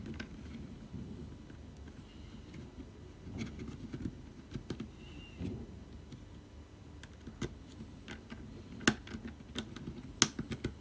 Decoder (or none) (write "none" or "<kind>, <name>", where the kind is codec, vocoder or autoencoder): none